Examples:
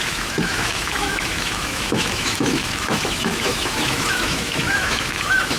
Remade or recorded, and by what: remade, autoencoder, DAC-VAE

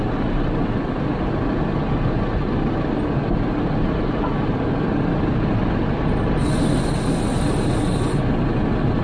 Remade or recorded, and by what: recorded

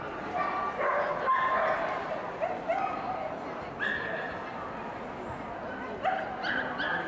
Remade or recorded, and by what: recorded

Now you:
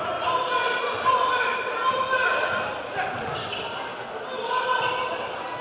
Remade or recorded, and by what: recorded